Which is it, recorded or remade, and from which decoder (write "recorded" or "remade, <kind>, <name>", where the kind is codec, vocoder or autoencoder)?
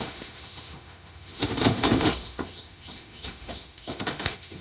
remade, autoencoder, DAC-VAE